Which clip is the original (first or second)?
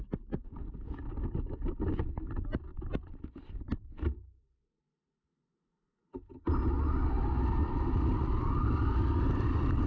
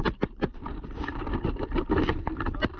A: first